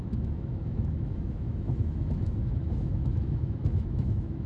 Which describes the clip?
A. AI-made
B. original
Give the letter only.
A